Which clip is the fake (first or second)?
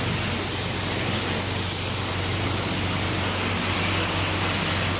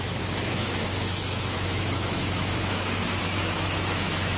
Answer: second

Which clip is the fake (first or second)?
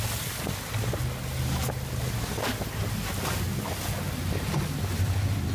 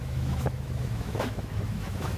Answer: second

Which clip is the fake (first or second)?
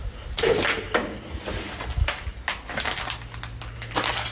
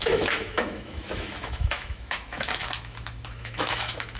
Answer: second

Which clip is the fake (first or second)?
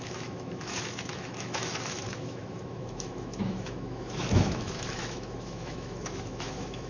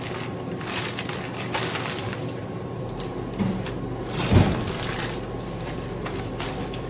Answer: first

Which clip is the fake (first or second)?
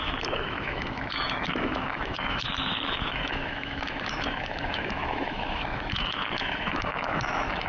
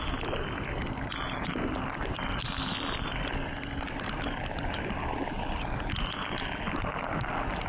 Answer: first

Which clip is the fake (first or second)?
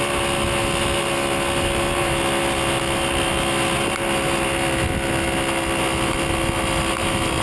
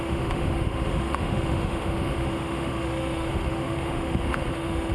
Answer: second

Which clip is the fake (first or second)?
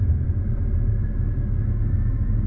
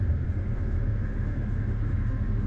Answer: second